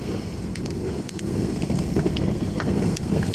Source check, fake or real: fake